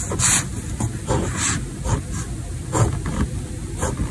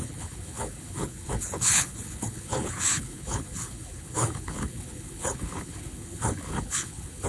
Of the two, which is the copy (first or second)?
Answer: second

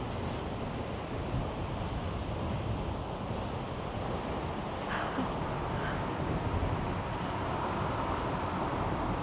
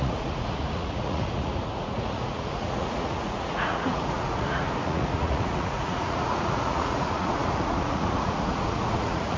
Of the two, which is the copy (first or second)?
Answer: second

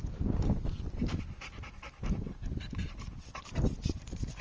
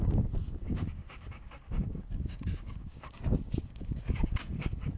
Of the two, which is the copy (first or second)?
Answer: second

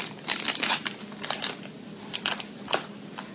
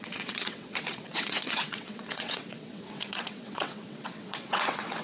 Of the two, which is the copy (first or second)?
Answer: second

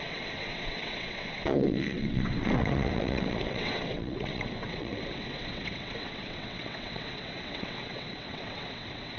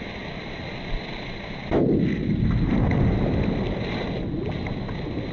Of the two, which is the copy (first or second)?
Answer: first